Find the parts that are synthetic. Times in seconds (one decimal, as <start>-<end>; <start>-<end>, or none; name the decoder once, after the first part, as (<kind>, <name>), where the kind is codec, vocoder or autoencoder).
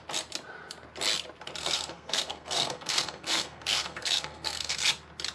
1.6-4.8 (codec, SNAC)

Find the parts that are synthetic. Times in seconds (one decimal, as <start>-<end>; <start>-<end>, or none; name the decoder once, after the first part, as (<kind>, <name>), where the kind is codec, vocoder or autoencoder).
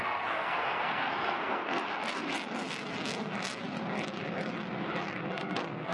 0.0-1.8 (codec, SNAC); 5.3-5.9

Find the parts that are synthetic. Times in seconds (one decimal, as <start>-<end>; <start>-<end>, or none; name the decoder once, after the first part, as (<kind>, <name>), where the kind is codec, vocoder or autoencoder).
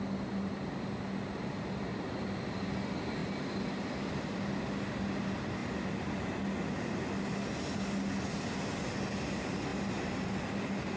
none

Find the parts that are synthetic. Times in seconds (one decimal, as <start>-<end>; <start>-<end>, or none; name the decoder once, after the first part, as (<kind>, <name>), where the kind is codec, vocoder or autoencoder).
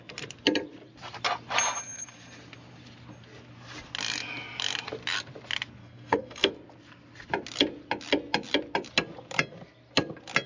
5.8-6.5 (codec, SNAC)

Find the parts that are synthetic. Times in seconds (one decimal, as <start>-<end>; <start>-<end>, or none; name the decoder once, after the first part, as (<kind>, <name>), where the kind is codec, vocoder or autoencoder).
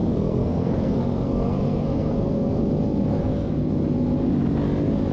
0.0-2.6 (codec, SNAC); 3.1-3.7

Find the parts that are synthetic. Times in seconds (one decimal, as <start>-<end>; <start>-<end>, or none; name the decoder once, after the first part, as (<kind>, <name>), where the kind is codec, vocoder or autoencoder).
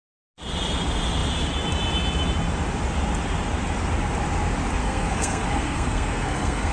4.8-6.7 (codec, SNAC)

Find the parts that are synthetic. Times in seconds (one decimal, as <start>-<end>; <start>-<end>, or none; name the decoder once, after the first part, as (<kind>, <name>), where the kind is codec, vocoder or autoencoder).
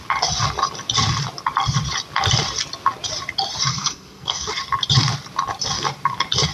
3.7-4.5 (codec, SNAC)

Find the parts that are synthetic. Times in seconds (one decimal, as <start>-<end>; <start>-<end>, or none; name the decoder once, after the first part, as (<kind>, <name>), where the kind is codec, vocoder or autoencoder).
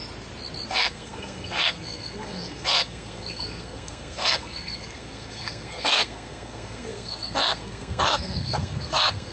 0.7-9.3 (codec, SNAC)